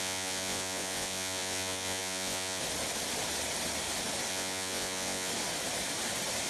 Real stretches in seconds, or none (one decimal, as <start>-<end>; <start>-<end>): 2.6-4.3; 5.3-6.5